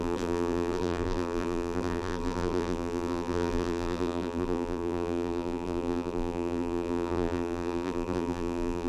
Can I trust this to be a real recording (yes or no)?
no